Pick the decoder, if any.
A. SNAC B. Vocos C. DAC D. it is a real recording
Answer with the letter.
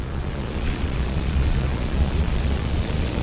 B